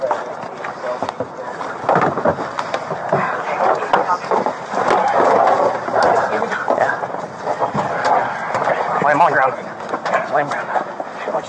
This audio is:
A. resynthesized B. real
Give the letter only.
B